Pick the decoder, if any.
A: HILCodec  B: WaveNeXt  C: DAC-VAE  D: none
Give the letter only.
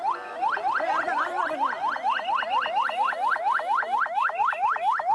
D